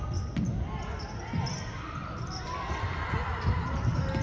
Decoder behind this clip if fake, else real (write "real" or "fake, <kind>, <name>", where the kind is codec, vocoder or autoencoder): real